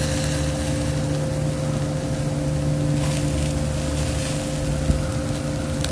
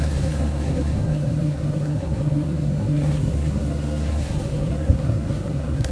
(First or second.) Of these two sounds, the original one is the first